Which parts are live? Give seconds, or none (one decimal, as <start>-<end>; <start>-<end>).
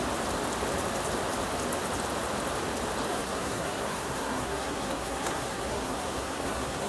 0.0-3.1